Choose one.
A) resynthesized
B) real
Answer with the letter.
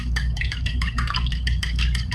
A